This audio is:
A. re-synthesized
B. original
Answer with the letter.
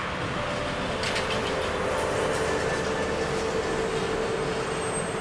B